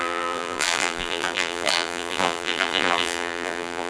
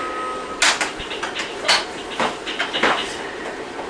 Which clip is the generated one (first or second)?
first